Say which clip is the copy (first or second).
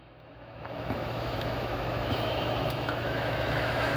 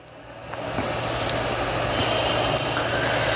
first